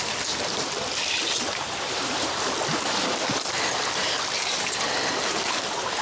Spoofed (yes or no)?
no